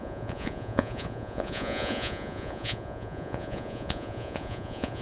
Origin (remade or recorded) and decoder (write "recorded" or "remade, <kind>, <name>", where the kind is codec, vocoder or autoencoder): remade, vocoder, Vocos